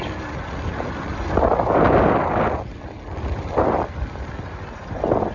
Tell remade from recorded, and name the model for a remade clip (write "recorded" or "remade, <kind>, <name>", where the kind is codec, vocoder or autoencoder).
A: recorded